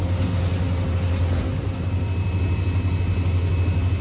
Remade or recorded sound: recorded